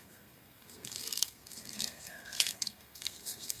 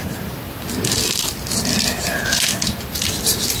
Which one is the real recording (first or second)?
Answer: second